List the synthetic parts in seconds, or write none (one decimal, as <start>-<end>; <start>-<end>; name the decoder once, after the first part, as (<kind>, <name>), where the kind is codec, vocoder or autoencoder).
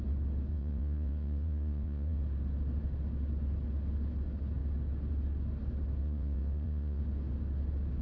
0.5-2.2 (vocoder, WaveNeXt); 6.0-7.0